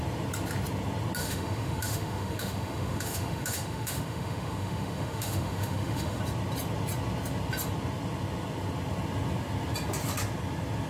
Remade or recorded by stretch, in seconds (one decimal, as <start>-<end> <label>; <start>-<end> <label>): 0.0-1.2 recorded; 1.2-6.2 remade; 6.2-10.9 recorded